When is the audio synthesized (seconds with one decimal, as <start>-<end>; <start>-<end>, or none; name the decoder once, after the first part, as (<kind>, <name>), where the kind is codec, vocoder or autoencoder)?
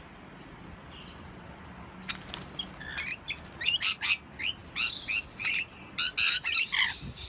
none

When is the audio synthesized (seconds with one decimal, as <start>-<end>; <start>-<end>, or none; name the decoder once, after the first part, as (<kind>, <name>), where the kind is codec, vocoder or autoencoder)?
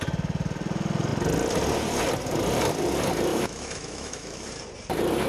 3.3-4.5 (autoencoder, DAC-VAE)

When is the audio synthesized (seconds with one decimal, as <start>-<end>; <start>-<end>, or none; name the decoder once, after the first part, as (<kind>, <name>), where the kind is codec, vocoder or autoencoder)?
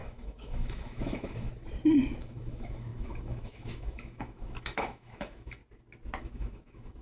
0.0-1.5 (autoencoder, DAC-VAE); 2.2-5.6; 6.2-7.0